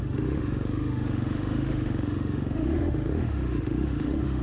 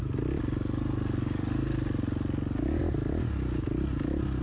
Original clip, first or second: second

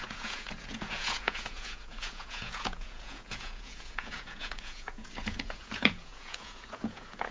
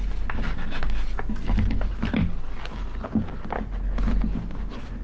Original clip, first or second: second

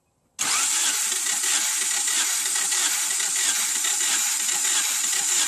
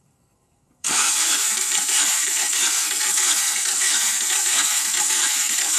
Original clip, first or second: first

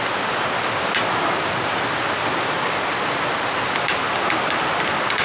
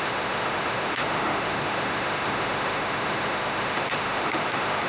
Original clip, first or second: first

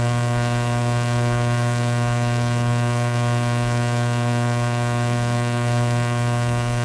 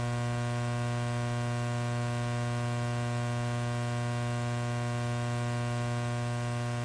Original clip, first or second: second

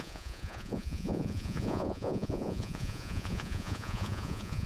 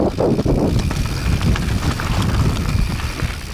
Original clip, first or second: second